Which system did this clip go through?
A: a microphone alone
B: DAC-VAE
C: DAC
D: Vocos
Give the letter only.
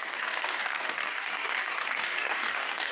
C